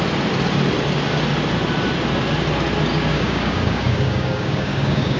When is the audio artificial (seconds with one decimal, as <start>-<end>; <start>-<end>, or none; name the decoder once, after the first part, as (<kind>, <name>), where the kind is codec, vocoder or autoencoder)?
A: 2.9-5.2 (codec, DAC)